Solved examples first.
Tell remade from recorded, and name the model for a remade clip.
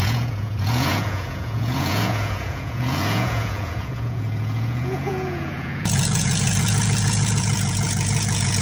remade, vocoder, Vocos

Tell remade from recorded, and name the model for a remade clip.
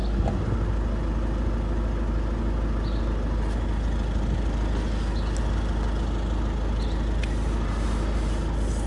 recorded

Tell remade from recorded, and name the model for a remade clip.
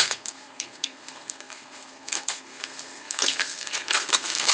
remade, codec, SNAC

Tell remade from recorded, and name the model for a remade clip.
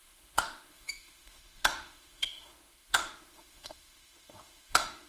remade, autoencoder, DAC-VAE